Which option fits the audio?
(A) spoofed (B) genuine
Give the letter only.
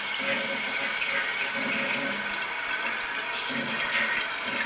B